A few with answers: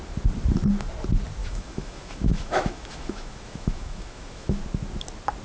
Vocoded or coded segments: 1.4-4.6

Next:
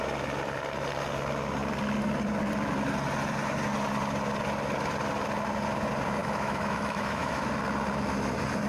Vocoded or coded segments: 6.2-7.5